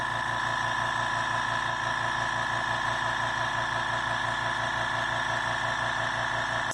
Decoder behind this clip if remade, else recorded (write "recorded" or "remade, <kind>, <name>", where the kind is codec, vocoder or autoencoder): recorded